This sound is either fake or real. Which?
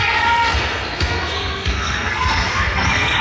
fake